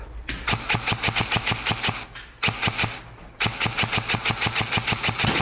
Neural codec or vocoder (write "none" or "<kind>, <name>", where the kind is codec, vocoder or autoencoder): none